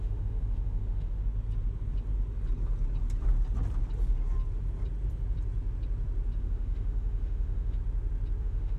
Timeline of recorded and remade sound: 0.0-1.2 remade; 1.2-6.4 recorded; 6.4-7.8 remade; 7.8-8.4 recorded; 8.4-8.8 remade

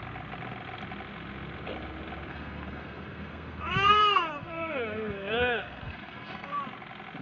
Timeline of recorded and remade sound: 0.0-2.3 recorded; 2.3-6.6 remade; 6.6-7.2 recorded